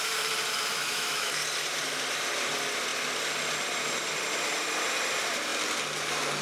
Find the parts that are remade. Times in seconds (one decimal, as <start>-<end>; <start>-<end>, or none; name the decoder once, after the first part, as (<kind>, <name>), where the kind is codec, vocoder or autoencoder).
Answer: 0.7-1.3 (autoencoder, DAC-VAE)